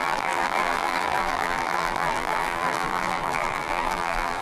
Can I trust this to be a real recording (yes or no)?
no